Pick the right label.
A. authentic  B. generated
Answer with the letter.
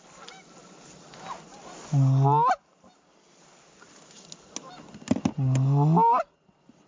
A